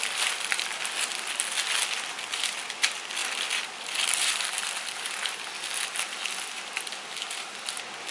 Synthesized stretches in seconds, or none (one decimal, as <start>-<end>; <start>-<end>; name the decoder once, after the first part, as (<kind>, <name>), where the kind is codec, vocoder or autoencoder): 3.2-4.3 (vocoder, BigVGAN v2)